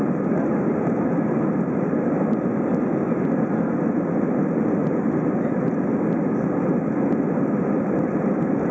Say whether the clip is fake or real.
real